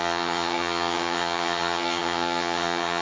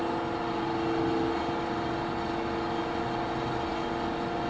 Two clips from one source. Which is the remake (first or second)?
first